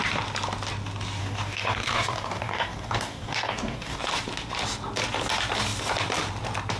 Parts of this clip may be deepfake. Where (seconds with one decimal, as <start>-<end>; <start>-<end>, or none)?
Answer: 1.2-4.0